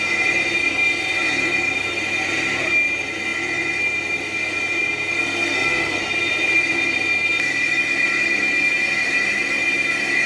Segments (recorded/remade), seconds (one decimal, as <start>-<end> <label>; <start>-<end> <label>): 0.0-5.1 recorded; 5.1-6.0 remade; 6.0-10.3 recorded